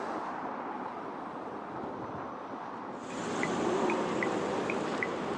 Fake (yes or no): no